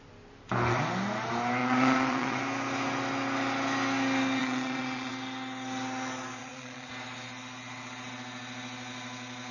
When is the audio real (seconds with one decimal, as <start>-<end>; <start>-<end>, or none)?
0.0-1.6; 2.4-4.4; 5.1-6.4; 6.9-9.5